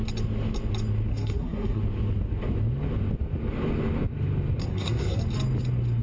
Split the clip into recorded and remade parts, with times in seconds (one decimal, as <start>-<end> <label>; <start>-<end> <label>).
0.0-1.1 recorded; 1.1-1.8 remade; 1.8-4.6 recorded; 4.6-5.2 remade; 5.2-6.0 recorded